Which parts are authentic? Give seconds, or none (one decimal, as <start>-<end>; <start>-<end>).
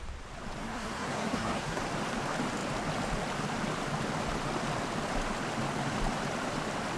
0.0-0.6; 1.8-7.0